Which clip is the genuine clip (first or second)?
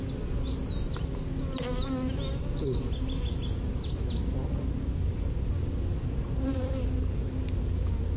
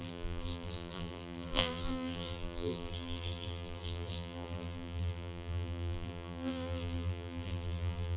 first